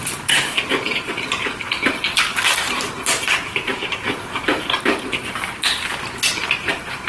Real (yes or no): no